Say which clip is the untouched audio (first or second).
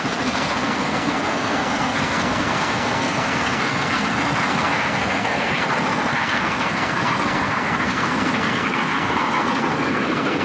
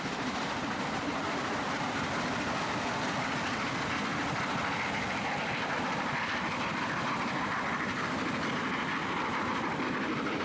second